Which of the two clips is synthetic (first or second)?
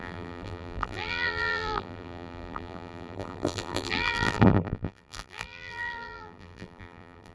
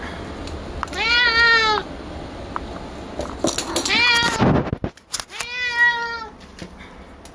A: first